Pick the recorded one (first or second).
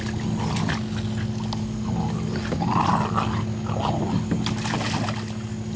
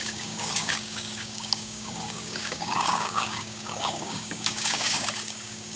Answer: first